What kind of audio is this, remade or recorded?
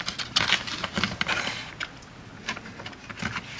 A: recorded